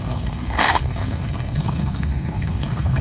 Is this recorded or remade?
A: remade